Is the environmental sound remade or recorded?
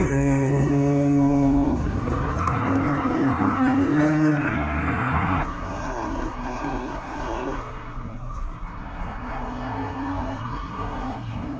remade